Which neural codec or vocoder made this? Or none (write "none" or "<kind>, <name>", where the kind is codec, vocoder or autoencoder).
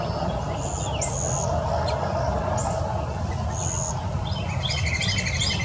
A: none